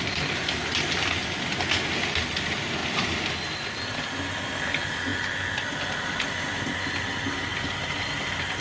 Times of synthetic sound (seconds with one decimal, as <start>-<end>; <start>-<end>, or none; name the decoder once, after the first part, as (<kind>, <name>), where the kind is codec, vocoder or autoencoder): none